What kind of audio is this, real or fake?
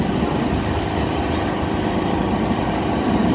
real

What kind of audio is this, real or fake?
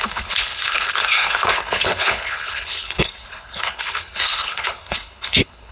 fake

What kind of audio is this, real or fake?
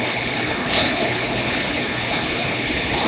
fake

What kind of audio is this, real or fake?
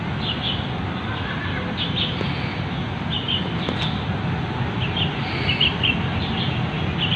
real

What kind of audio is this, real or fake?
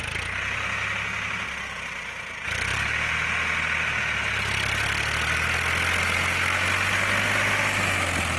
real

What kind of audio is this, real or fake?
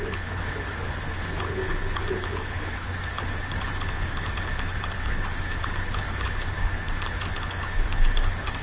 fake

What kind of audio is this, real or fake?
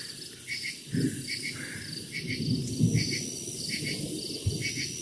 real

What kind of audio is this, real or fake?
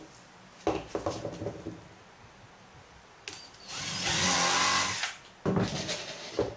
real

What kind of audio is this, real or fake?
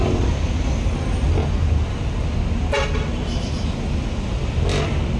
real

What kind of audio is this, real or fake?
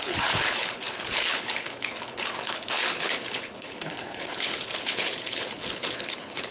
fake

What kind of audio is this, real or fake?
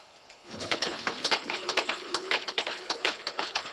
fake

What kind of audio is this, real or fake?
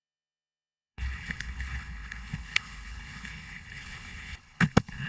fake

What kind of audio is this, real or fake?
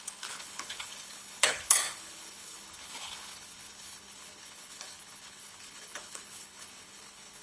fake